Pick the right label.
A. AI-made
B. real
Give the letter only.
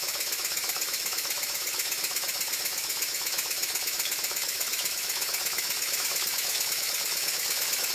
A